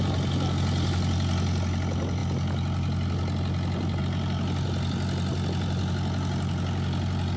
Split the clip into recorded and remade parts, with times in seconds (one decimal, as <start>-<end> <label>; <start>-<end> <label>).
0.0-7.4 recorded